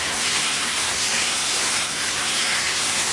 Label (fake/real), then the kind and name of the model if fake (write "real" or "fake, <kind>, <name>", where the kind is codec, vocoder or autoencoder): fake, codec, SNAC